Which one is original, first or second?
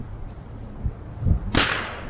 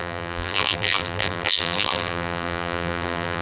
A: first